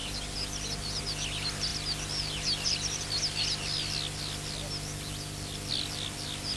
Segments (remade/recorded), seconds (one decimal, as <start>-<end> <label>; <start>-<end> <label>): 0.0-6.6 recorded